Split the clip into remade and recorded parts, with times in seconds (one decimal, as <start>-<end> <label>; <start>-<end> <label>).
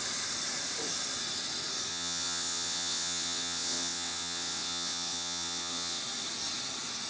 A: 0.0-1.9 recorded; 1.9-6.0 remade; 6.0-7.1 recorded